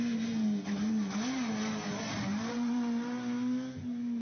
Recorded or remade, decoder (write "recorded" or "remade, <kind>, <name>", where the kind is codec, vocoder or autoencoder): recorded